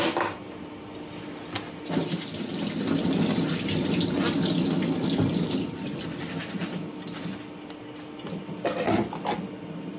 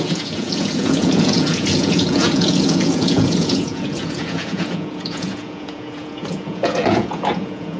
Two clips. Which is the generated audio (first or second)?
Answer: second